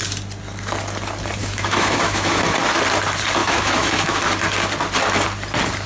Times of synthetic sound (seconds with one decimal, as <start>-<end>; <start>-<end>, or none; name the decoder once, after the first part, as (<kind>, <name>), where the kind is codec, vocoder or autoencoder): 1.4-2.4 (autoencoder, DAC-VAE); 3.4-4.2